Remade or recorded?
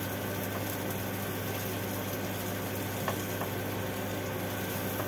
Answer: recorded